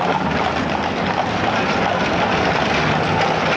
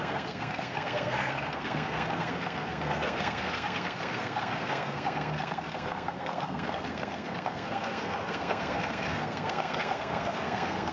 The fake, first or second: second